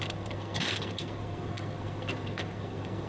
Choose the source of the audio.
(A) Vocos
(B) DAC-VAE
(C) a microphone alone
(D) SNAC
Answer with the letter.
D